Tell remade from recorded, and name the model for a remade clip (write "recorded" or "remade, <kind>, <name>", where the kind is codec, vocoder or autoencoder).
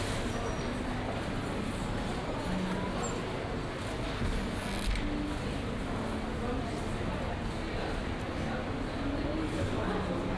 recorded